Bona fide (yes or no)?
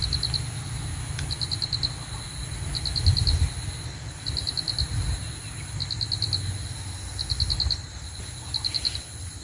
yes